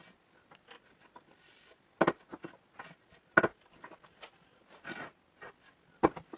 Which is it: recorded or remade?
recorded